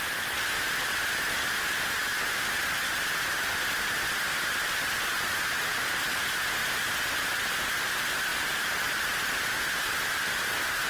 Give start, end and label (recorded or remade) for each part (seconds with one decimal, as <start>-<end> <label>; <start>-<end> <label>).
0.0-8.3 recorded; 8.3-8.9 remade; 8.9-10.9 recorded